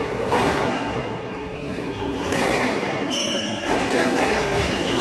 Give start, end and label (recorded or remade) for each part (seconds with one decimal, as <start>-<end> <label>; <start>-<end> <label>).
0.0-5.0 remade

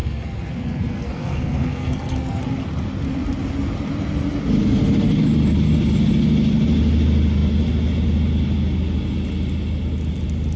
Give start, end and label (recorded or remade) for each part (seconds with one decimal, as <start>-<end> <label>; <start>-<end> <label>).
0.0-2.4 remade; 2.4-10.6 recorded

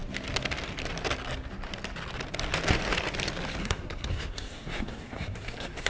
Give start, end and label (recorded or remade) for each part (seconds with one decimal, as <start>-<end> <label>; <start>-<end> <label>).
0.0-3.6 recorded; 3.6-5.9 remade